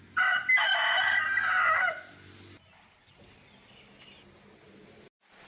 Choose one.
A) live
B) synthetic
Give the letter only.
A